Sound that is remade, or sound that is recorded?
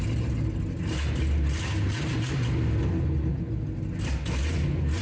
recorded